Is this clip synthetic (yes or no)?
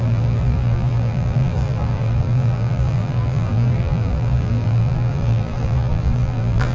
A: yes